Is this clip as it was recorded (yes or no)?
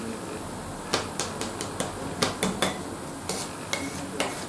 yes